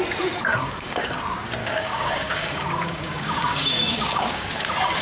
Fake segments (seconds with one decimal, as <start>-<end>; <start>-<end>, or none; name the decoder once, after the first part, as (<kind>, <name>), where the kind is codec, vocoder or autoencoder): 0.5-1.2 (codec, DAC); 1.6-4.5